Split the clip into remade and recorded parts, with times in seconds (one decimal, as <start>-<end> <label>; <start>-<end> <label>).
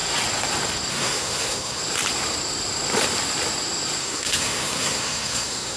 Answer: 0.0-0.9 recorded; 0.9-1.8 remade; 1.8-4.0 recorded; 4.0-5.8 remade